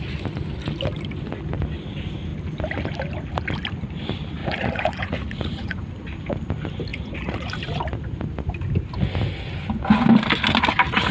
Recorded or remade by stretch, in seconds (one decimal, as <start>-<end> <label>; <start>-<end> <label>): 0.0-4.4 recorded; 4.4-5.9 remade; 5.9-6.9 recorded; 6.9-7.6 remade; 7.6-11.1 recorded